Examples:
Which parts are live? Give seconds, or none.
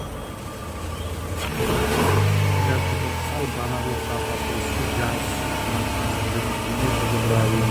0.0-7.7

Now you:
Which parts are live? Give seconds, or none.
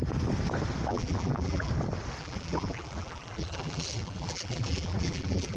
0.0-0.9; 1.7-2.2